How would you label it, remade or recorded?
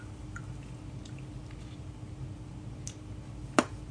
recorded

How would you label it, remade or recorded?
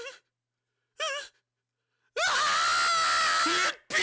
recorded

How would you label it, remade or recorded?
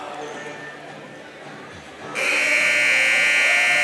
recorded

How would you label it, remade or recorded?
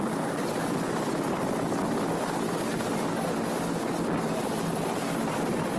recorded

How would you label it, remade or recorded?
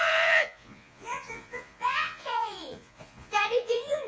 remade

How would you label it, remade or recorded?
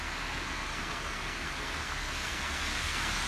remade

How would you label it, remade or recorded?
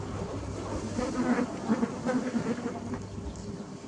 recorded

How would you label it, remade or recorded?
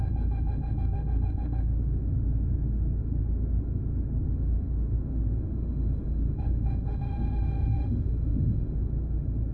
remade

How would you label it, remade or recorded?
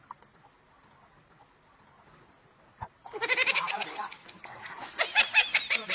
recorded